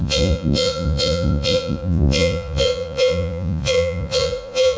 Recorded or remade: remade